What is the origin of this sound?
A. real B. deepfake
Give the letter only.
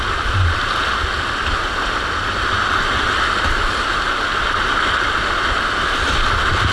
A